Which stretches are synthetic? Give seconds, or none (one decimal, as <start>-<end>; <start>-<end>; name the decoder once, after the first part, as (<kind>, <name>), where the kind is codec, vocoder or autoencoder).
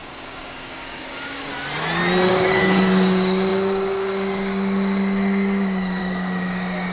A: 0.0-1.5 (codec, DAC); 2.3-6.9